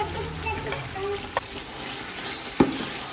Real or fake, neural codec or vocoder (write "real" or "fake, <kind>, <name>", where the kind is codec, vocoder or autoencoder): real